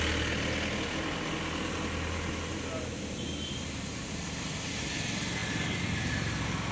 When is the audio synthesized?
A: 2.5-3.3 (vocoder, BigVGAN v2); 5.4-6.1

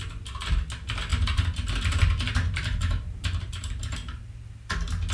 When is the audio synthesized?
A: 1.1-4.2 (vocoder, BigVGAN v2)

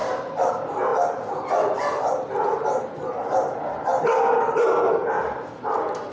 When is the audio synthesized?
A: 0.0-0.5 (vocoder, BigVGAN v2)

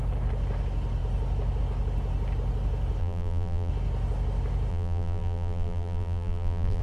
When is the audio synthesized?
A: 3.0-3.7 (vocoder, BigVGAN v2); 4.7-6.8

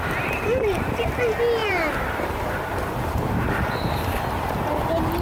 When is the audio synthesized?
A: 1.6-4.7 (vocoder, BigVGAN v2)

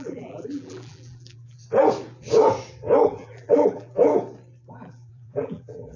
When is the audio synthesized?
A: 0.0-1.6 (vocoder, BigVGAN v2); 3.0-4.1; 4.7-6.0

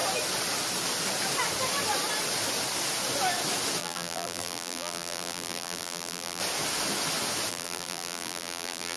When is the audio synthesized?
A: 3.8-6.4 (vocoder, BigVGAN v2); 7.5-9.0